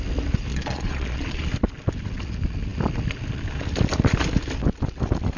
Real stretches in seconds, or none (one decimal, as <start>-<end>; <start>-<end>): 0.0-0.5; 1.5-5.4